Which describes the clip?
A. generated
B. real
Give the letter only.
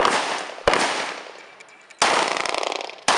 B